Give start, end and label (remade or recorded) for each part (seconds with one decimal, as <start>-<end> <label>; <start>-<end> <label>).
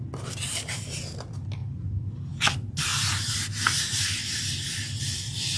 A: 0.0-5.6 recorded